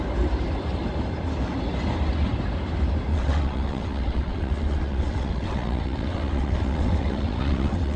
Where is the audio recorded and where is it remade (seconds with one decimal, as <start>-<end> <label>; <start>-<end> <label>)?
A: 0.0-3.1 recorded; 3.1-8.0 remade